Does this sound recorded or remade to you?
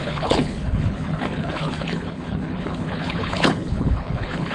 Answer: remade